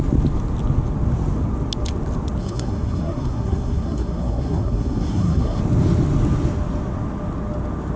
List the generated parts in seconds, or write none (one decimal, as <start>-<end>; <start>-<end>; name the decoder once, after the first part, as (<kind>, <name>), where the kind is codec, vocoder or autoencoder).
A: 2.4-5.6 (codec, SNAC)